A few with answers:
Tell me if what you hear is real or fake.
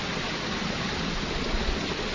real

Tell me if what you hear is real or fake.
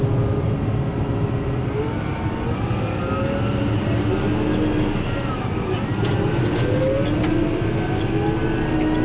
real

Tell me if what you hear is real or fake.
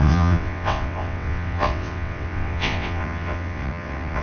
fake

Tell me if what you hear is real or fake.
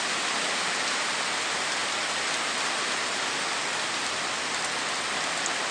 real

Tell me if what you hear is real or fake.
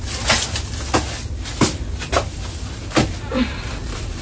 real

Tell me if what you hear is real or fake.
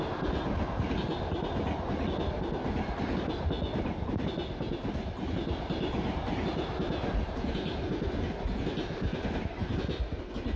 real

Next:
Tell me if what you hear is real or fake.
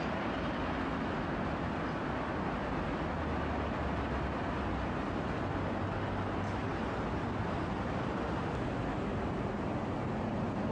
real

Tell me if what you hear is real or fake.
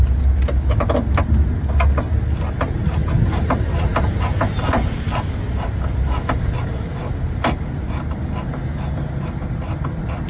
real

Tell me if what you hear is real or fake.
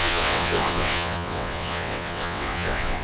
fake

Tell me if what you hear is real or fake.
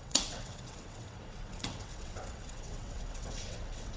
fake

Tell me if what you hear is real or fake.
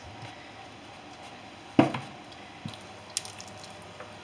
real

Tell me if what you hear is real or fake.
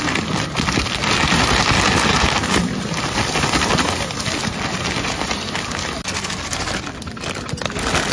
real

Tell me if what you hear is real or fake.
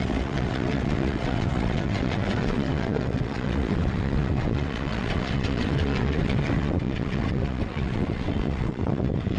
fake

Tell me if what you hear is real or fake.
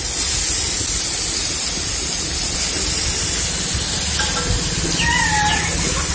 real